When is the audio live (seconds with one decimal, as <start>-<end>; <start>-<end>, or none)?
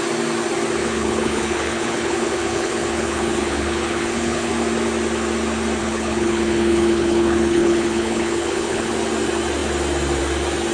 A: 0.0-0.8; 4.5-5.8; 8.9-10.7